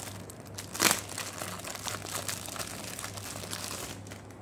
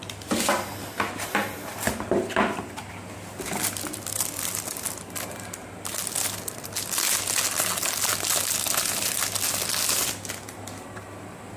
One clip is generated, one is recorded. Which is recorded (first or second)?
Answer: second